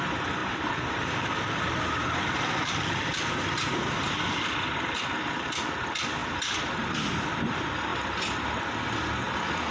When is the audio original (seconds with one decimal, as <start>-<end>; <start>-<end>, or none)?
0.0-0.4; 4.4-9.7